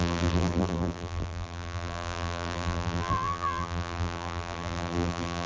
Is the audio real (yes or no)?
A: no